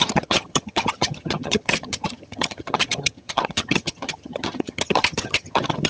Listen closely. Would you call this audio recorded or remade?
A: remade